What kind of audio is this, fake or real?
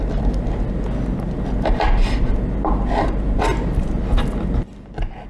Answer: real